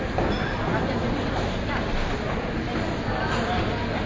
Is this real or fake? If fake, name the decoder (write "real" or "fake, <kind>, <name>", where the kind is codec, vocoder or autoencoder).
real